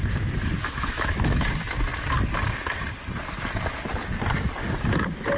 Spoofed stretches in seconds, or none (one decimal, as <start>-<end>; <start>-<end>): 0.6-1.4